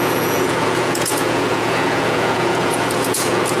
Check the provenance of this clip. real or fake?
fake